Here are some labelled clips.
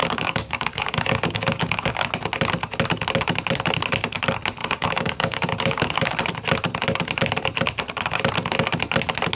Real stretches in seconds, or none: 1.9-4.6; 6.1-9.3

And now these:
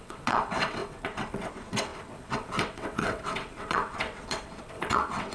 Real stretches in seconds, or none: none

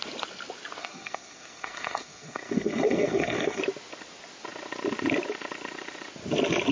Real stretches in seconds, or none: 0.0-0.8; 3.6-6.7

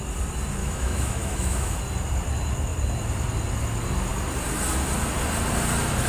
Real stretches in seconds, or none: 0.0-0.6; 1.8-6.1

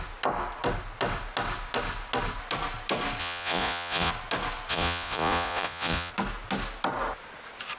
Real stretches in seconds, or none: 0.0-3.2; 4.1-4.7; 6.1-7.8